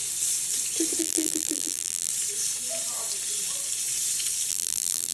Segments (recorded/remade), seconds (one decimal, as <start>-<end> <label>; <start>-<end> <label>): 0.0-1.0 recorded; 1.0-2.1 remade; 2.1-4.5 recorded; 4.5-5.1 remade